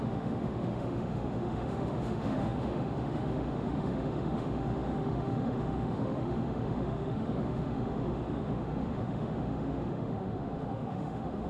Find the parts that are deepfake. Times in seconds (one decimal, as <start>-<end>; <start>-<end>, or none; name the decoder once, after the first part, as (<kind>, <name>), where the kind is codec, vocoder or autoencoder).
0.0-11.5 (autoencoder, DAC-VAE)